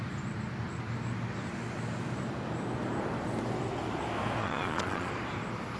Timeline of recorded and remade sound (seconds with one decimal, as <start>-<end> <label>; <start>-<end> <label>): 0.0-4.4 recorded; 4.4-5.1 remade; 5.1-5.8 recorded